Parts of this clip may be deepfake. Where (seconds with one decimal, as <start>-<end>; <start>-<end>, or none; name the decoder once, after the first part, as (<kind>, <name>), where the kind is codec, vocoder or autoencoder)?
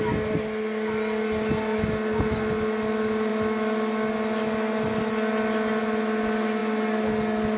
none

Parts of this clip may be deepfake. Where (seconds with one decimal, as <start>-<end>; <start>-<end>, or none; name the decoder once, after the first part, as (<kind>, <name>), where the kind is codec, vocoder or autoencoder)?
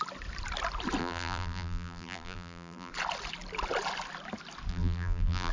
1.0-2.9 (vocoder, BigVGAN v2); 4.7-5.5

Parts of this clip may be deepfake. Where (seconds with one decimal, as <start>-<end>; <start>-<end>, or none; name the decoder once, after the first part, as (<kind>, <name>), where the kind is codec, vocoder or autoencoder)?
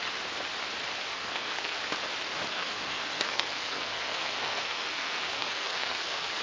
1.1-1.8 (codec, SNAC); 2.5-6.4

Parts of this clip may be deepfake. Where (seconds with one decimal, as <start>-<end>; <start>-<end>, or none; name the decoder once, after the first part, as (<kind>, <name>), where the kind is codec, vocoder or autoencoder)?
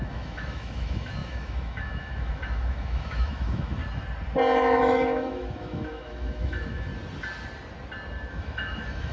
0.0-3.8 (autoencoder, DAC-VAE); 4.8-6.9; 8.3-9.1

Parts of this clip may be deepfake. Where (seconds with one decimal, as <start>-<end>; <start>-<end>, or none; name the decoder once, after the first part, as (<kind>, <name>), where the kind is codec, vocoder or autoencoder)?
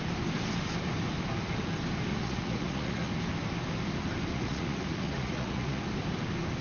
2.1-3.1 (vocoder, Vocos); 4.3-5.8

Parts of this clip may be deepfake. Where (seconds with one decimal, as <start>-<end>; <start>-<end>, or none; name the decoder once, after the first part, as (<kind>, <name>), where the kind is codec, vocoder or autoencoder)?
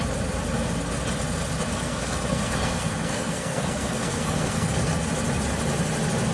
1.7-5.1 (codec, SNAC)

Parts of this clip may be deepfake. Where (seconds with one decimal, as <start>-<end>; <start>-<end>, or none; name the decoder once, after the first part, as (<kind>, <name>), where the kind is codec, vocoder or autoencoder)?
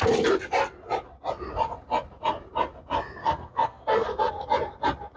3.2-4.3 (codec, SNAC)